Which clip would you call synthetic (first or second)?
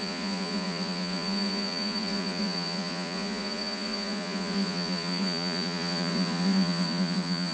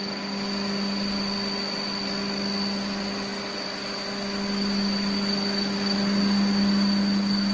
first